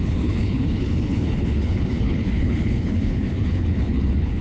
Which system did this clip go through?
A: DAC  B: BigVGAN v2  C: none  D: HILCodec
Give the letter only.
D